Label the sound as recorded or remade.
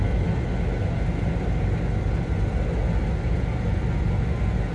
recorded